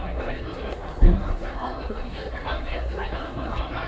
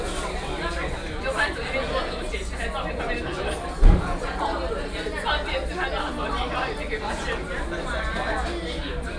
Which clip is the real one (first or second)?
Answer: second